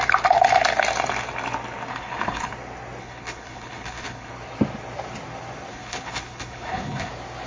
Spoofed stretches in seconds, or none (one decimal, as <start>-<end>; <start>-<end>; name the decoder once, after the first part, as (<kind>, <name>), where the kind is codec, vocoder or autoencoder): 1.9-2.5 (codec, HILCodec); 3.0-4.3; 5.7-7.1